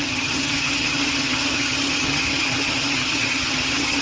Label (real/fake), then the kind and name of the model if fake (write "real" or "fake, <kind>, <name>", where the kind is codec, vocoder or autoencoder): fake, vocoder, HiFi-GAN